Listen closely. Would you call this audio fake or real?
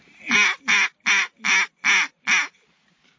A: real